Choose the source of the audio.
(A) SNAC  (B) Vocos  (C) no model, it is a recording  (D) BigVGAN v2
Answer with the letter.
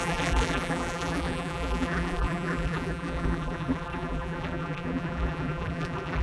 D